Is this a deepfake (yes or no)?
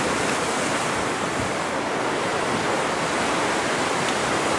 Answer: no